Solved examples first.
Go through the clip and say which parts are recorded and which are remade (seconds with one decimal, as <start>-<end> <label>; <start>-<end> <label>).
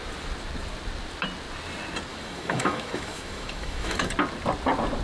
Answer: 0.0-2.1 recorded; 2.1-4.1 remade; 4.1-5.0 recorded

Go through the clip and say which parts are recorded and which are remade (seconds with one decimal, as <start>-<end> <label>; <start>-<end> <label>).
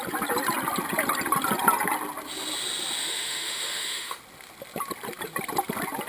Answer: 0.0-3.0 recorded; 3.0-4.2 remade; 4.2-6.1 recorded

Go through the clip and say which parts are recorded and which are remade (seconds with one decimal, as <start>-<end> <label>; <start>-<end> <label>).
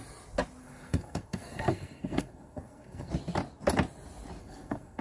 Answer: 0.0-0.6 recorded; 0.6-3.1 remade; 3.1-4.4 recorded; 4.4-5.0 remade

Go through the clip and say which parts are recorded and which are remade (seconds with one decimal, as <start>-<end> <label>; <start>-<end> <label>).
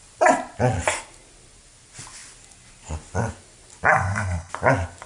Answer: 0.0-3.9 recorded; 3.9-4.5 remade; 4.5-5.1 recorded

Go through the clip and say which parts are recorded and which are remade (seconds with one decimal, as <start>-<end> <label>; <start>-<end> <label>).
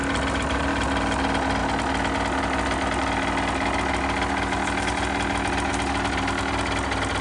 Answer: 0.0-7.2 recorded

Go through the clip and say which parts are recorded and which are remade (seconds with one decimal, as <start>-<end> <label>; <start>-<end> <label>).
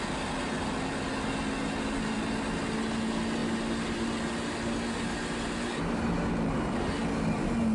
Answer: 0.0-7.7 recorded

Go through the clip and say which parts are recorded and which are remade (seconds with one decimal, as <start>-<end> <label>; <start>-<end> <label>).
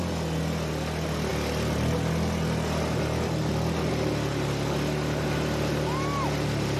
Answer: 0.0-6.8 recorded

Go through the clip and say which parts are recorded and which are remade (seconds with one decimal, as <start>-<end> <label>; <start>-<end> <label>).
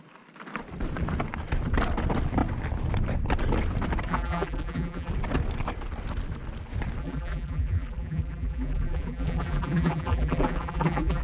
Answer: 0.0-4.1 recorded; 4.1-5.1 remade; 5.1-7.0 recorded; 7.0-11.2 remade